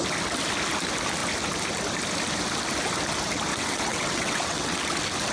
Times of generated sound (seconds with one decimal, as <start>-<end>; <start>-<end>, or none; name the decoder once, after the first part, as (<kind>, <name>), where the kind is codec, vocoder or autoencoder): 3.5-4.8 (vocoder, WaveNeXt)